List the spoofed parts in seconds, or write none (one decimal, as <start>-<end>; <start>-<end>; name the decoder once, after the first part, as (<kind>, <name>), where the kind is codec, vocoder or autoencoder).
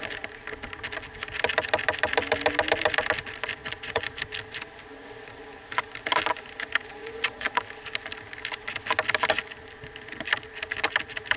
3.6-4.2 (vocoder, Vocos); 7.0-7.5